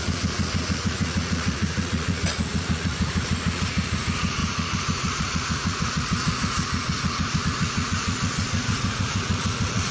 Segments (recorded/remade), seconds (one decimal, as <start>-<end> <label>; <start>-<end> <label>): 0.0-9.9 remade